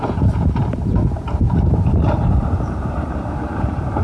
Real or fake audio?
fake